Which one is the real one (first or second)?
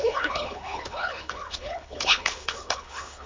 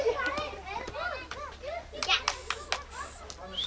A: second